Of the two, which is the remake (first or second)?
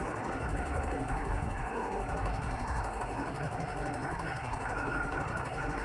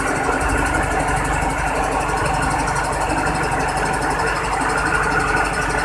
first